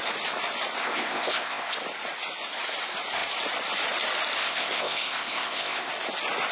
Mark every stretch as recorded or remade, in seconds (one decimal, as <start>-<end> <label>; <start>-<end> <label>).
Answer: 0.0-0.8 recorded; 0.8-1.7 remade; 1.7-4.4 recorded; 4.4-5.9 remade; 5.9-6.5 recorded

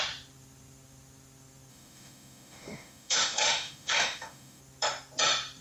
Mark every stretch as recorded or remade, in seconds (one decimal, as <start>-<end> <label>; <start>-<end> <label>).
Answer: 0.0-1.7 recorded; 1.7-4.6 remade; 4.6-5.6 recorded

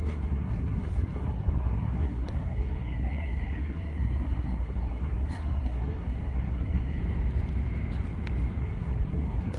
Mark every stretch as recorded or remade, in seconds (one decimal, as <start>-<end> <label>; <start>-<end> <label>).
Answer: 0.0-7.0 remade; 7.0-8.6 recorded; 8.6-9.6 remade

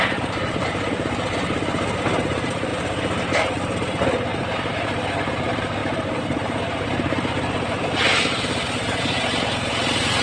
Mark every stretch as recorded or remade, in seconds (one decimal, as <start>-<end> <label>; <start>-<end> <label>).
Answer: 0.0-4.3 recorded; 4.3-5.2 remade; 5.2-10.2 recorded

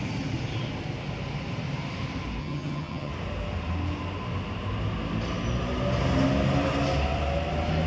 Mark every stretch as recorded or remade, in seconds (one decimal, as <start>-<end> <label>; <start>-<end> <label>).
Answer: 0.0-2.4 recorded; 2.4-3.1 remade; 3.1-7.9 recorded

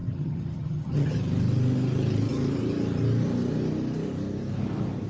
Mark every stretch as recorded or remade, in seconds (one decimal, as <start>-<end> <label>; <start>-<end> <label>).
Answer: 0.0-1.2 remade; 1.2-5.1 recorded